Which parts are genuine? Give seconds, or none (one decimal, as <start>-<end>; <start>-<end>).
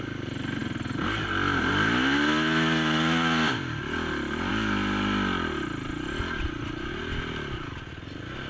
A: 0.0-8.5